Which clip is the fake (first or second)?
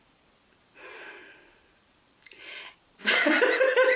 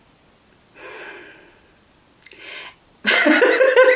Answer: first